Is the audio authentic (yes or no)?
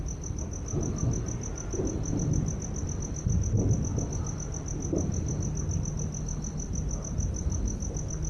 yes